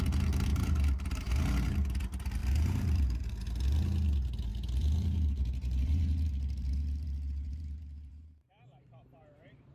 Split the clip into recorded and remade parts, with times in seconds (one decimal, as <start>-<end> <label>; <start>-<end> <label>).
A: 0.0-0.5 recorded; 0.5-1.3 remade; 1.3-2.4 recorded; 2.4-3.3 remade; 3.3-4.5 recorded; 4.5-9.7 remade